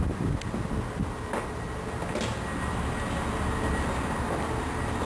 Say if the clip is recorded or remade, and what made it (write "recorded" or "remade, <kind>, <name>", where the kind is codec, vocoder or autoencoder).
recorded